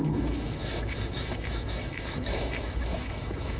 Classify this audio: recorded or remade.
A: remade